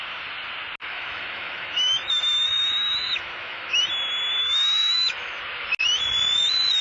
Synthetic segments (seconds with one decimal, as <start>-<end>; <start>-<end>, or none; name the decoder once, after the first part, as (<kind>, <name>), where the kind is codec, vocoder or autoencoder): 0.8-3.8 (autoencoder, DAC-VAE); 4.4-5.4